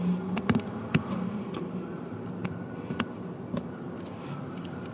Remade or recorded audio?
recorded